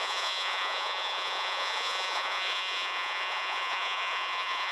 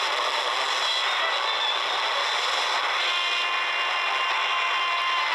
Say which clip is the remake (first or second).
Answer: first